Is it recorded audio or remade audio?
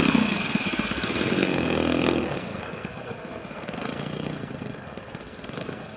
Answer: remade